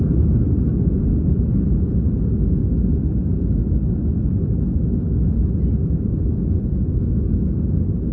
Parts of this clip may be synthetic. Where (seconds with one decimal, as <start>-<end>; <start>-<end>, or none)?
none